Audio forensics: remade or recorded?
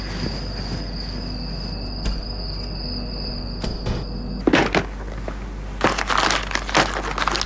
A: recorded